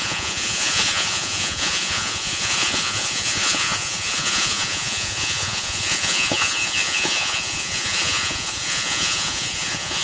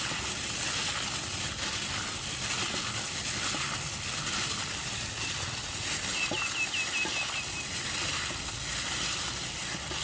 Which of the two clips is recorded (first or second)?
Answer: second